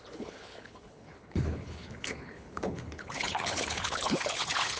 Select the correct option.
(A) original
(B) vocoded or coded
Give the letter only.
B